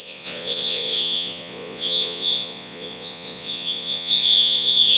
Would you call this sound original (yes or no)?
no